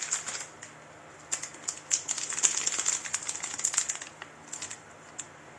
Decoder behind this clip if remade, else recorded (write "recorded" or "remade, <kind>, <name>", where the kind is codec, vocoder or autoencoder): recorded